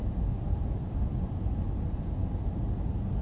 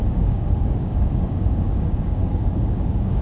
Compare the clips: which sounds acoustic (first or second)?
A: first